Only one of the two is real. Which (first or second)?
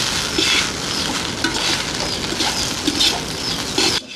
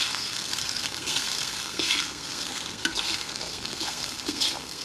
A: first